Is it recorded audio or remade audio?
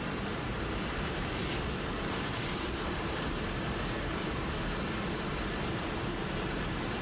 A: remade